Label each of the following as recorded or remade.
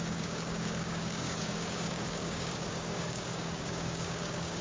remade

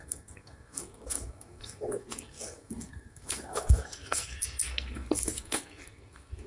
remade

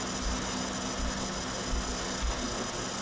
recorded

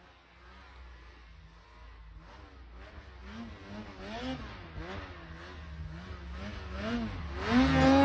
recorded